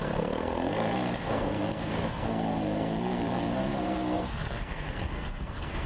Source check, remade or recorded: remade